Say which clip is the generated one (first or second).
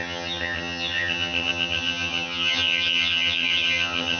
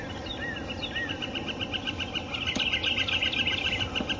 first